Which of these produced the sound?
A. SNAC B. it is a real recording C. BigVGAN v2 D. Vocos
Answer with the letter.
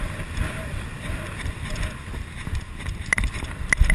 B